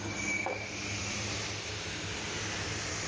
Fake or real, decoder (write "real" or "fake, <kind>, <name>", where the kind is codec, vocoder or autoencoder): real